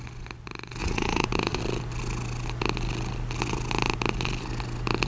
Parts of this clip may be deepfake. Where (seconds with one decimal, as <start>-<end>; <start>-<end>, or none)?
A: 0.8-1.6

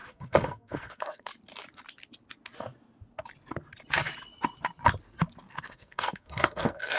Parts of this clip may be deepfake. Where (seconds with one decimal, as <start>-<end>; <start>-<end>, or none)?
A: 0.0-1.3; 5.5-7.0

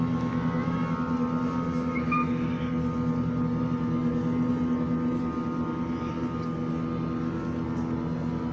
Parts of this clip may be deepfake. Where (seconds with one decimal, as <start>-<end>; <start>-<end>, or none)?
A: none

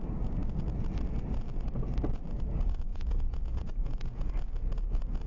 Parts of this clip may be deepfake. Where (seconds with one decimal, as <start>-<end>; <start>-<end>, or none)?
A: 2.9-4.3

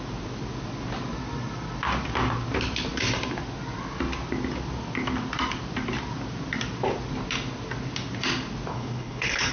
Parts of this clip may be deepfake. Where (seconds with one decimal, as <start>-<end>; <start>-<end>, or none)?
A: 8.7-9.5

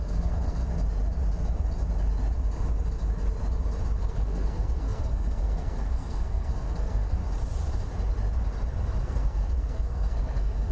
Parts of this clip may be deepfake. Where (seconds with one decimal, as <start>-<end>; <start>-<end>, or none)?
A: 0.0-0.6; 4.0-7.2; 9.0-10.7